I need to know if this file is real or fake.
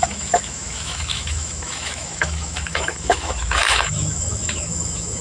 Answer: fake